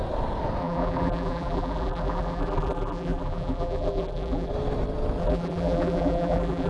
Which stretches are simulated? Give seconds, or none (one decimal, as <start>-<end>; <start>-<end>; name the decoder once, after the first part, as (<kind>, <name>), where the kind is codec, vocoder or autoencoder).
0.6-4.5 (vocoder, BigVGAN v2); 5.2-6.7